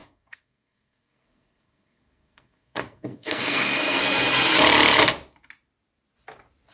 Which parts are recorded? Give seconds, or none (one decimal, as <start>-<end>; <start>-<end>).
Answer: 4.0-6.7